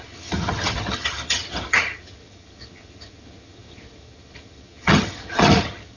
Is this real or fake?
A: fake